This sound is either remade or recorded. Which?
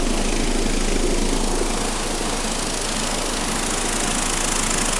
recorded